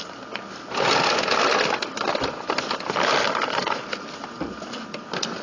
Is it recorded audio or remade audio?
recorded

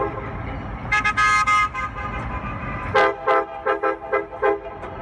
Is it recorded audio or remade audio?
recorded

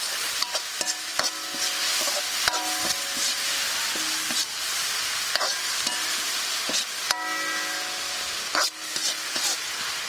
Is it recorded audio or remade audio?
recorded